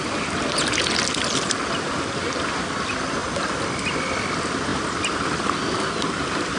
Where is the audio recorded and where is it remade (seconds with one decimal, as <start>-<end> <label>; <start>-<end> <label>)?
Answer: 0.0-6.6 recorded

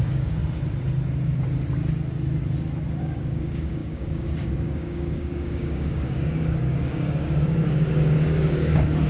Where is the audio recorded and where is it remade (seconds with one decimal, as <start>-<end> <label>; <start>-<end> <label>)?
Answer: 0.0-0.4 remade; 0.4-3.0 recorded; 3.0-9.1 remade

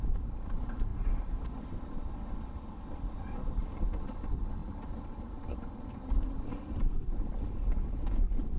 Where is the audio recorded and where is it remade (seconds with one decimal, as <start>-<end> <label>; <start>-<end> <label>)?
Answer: 0.0-4.6 recorded; 4.6-7.3 remade; 7.3-8.6 recorded

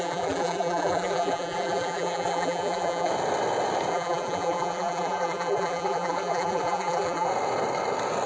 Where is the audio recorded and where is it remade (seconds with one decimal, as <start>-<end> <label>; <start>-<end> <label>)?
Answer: 0.0-3.1 remade; 3.1-3.9 recorded; 3.9-7.3 remade; 7.3-8.3 recorded

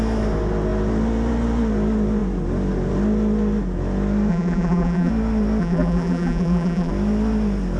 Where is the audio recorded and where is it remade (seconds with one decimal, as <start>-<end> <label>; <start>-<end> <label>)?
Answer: 0.0-4.3 recorded; 4.3-5.1 remade; 5.1-5.6 recorded; 5.6-6.9 remade; 6.9-7.8 recorded